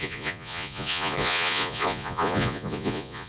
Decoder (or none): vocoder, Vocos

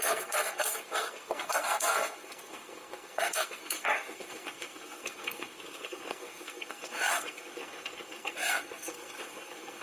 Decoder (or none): codec, SNAC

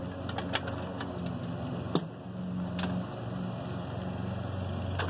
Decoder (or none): none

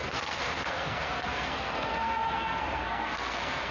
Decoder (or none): codec, SNAC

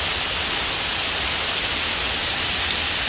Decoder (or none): none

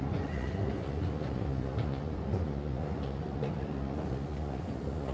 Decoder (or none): vocoder, Vocos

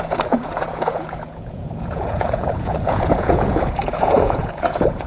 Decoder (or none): vocoder, Vocos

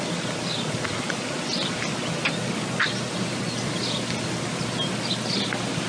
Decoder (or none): none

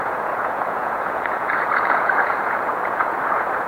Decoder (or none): vocoder, Vocos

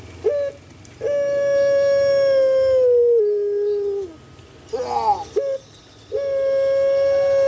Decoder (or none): none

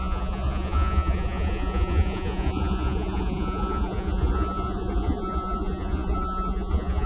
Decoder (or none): vocoder, Vocos